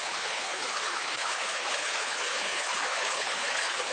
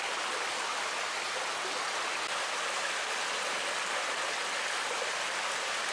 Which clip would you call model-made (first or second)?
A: first